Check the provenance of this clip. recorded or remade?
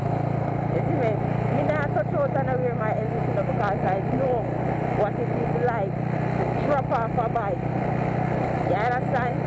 recorded